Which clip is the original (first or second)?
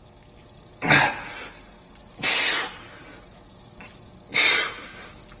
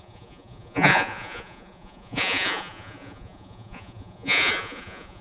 first